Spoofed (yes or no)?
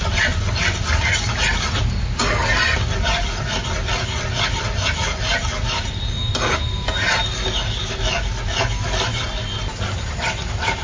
no